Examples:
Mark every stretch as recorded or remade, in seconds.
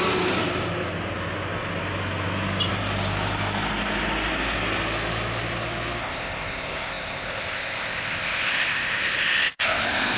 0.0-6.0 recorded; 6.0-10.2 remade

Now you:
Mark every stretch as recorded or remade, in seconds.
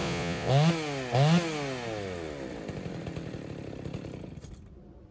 0.0-0.5 remade; 0.5-5.1 recorded